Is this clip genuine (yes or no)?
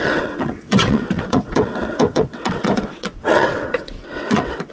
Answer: no